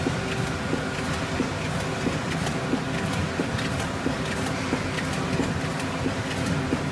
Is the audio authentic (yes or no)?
yes